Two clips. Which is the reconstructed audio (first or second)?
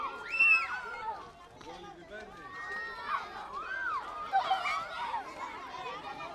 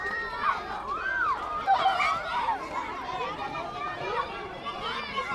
second